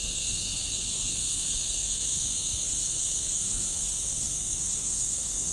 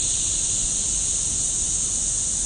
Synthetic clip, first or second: first